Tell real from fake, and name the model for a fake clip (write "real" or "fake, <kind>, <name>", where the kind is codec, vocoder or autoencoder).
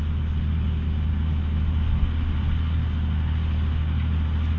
real